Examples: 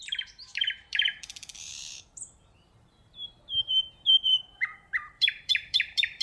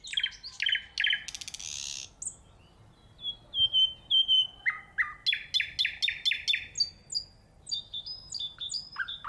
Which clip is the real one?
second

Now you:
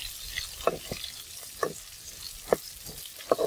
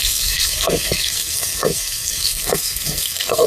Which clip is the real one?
first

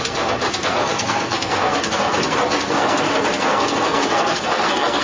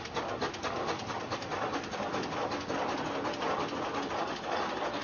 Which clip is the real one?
second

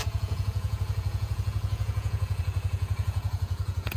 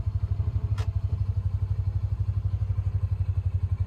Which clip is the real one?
second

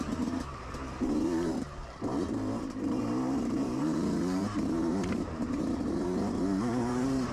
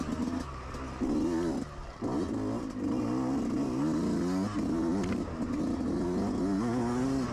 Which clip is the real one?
second